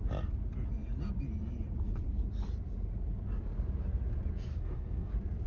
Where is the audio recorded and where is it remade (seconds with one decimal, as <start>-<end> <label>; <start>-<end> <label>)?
0.0-4.5 recorded; 4.5-5.1 remade; 5.1-5.5 recorded